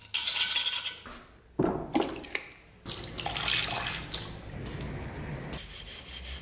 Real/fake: real